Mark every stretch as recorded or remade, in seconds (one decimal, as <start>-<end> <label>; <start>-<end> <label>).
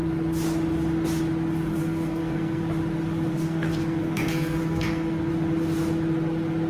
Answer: 0.0-1.7 recorded; 1.7-2.6 remade; 2.6-3.3 recorded; 3.3-5.3 remade; 5.3-6.7 recorded